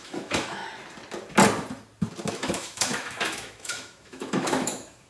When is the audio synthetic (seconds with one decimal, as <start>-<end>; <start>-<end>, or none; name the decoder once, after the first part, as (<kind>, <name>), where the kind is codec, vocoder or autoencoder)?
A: 0.0-0.6 (autoencoder, DAC-VAE); 2.3-5.1